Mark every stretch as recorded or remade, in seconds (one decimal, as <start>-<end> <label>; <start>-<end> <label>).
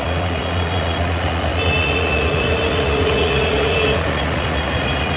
0.0-5.2 remade